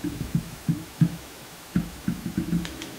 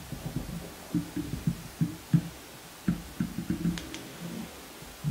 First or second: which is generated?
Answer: first